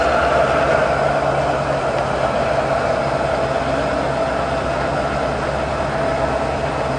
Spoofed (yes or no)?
no